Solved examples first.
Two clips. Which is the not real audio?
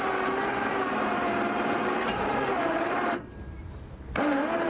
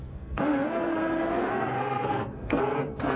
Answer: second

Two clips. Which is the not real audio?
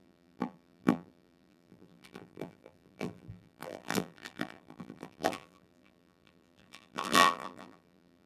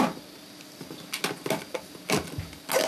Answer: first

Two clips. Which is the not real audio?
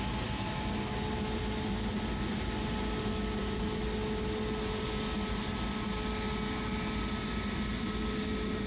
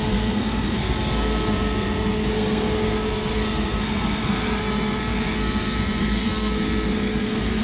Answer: second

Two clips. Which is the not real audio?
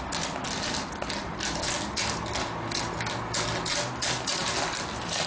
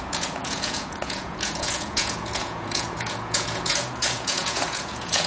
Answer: second